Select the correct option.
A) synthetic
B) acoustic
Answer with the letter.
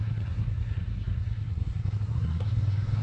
A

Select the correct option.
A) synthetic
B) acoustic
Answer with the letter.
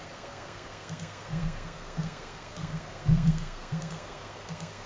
A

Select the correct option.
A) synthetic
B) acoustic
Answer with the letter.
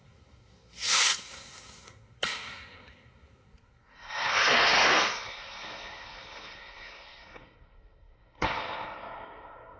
A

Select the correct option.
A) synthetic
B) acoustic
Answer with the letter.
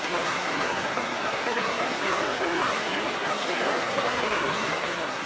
A